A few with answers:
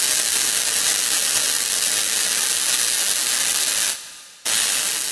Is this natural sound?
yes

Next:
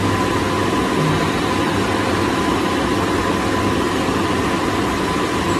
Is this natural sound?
yes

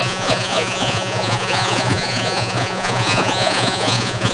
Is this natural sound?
no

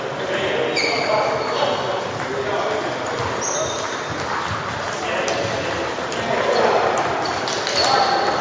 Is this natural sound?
yes